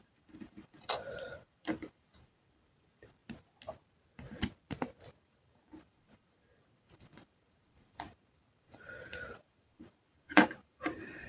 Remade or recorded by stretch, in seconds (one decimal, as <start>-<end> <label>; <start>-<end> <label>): 0.0-3.2 remade; 3.2-5.2 recorded; 5.2-11.3 remade